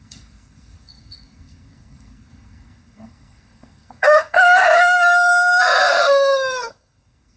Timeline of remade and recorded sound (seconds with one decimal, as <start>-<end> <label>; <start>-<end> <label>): 0.0-7.4 remade